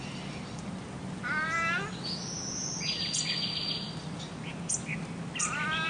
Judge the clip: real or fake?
real